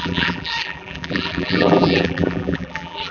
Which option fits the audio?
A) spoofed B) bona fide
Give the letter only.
A